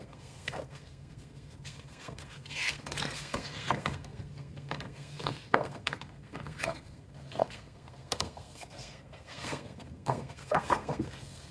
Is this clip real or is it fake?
fake